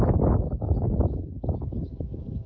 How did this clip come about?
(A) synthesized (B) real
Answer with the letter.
A